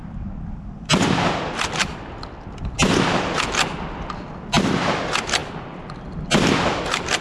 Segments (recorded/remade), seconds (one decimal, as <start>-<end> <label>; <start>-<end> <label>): 0.0-7.2 recorded